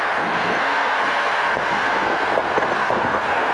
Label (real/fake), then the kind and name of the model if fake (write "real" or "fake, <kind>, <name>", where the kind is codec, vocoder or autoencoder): fake, codec, SNAC